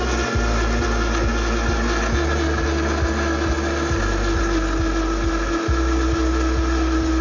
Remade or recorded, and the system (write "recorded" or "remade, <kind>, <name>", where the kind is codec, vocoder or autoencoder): recorded